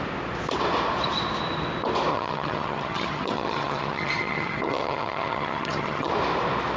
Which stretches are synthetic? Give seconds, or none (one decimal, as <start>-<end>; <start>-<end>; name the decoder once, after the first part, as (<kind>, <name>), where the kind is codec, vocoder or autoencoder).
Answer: 2.1-6.1 (vocoder, HiFi-GAN)